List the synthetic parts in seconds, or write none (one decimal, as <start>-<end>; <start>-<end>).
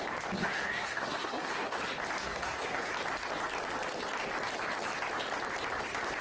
0.4-1.8; 2.2-2.9